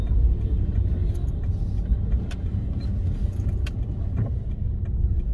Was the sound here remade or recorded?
recorded